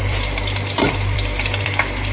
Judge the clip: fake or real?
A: fake